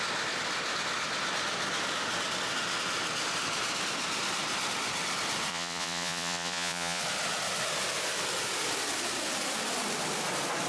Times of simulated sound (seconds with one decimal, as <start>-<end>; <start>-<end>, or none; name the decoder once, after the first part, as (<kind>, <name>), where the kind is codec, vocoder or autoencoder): 5.5-7.0 (vocoder, Vocos)